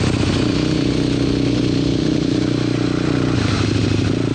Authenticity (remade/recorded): recorded